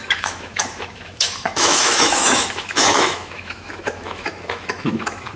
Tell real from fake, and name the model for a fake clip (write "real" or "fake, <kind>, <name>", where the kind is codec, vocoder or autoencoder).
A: fake, autoencoder, DAC-VAE